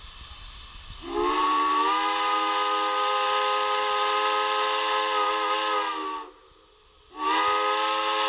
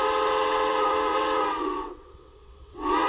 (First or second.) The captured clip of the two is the first